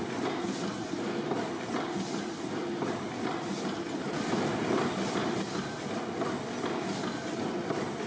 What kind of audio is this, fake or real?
real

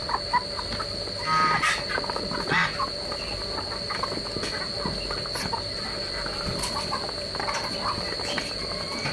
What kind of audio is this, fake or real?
real